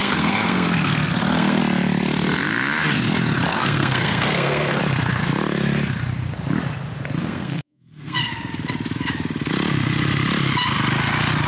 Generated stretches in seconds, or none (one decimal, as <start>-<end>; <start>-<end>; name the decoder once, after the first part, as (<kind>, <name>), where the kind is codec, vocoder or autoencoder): 0.0-1.6 (codec, SNAC); 3.5-4.8; 7.2-8.3